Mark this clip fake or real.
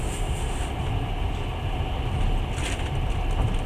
real